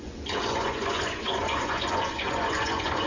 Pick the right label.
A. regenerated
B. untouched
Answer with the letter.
A